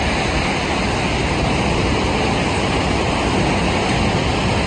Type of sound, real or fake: real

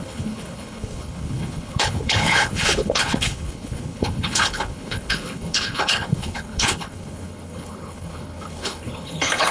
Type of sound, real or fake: fake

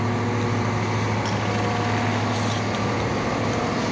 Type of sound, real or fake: real